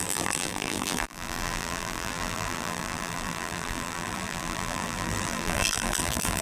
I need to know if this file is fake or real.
fake